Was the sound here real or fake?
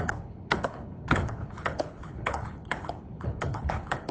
fake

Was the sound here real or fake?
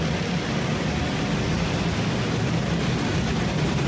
real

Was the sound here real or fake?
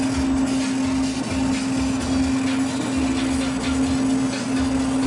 real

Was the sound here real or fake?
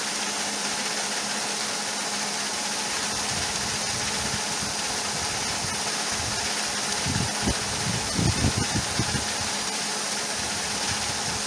real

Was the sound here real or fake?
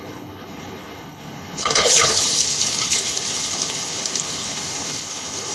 fake